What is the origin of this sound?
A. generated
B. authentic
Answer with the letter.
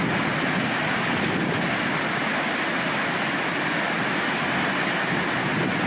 B